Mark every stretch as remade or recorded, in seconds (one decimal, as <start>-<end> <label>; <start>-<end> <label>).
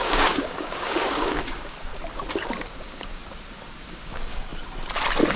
0.0-1.9 remade; 1.9-2.6 recorded; 2.6-3.2 remade; 3.2-3.9 recorded; 3.9-4.5 remade; 4.5-5.4 recorded